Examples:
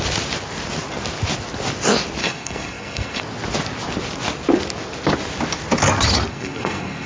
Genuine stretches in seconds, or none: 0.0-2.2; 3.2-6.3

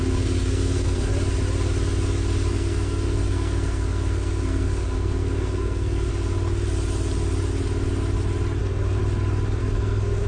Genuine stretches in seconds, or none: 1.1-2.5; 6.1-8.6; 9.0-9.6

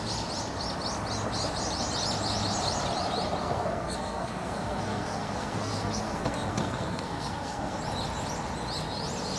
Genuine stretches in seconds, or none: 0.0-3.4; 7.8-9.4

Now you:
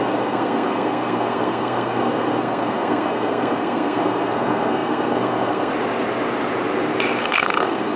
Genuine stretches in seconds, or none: 5.7-7.2

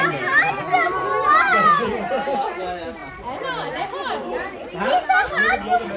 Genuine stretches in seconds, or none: 0.0-6.0